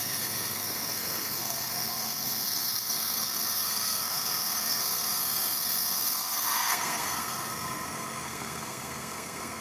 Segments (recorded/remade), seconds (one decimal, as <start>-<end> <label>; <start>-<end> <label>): 0.0-9.6 remade